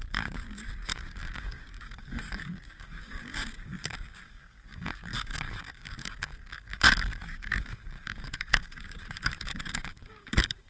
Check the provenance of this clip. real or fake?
fake